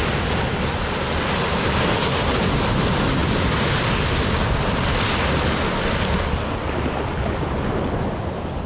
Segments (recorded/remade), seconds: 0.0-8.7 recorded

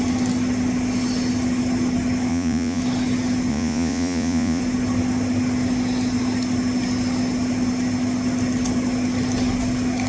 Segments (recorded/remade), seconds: 0.0-2.3 recorded; 2.3-2.8 remade; 2.8-3.5 recorded; 3.5-4.6 remade; 4.6-10.1 recorded

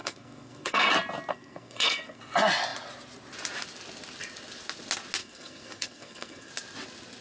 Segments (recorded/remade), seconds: 0.0-0.9 remade; 0.9-1.3 recorded; 1.3-2.2 remade; 2.2-5.2 recorded; 5.2-6.5 remade; 6.5-7.2 recorded

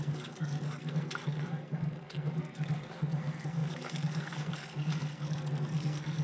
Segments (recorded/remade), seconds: 0.0-6.2 remade